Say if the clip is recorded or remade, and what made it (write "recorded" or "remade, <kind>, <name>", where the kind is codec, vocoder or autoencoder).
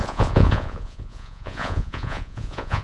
remade, vocoder, Vocos